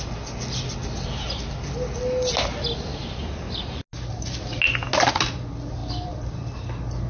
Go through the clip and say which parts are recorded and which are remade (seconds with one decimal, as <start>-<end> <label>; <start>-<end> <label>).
0.0-5.8 recorded; 5.8-7.1 remade